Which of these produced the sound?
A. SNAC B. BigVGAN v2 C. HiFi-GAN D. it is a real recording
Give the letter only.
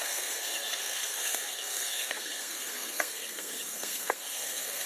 A